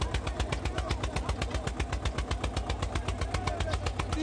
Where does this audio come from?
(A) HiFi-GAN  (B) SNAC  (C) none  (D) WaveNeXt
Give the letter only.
C